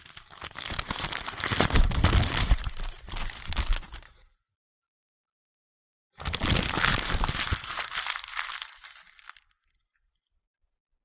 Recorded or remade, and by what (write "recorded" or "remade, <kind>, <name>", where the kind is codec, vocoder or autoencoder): recorded